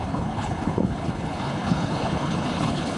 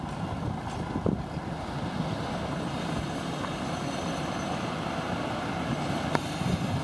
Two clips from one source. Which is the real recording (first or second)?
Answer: second